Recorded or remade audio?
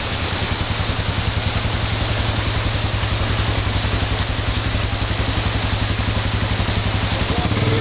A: recorded